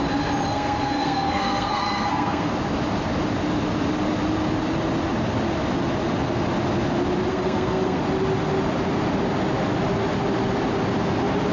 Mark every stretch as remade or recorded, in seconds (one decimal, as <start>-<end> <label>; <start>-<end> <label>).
0.0-0.5 recorded; 0.5-2.5 remade; 2.5-7.3 recorded; 7.3-8.0 remade; 8.0-11.5 recorded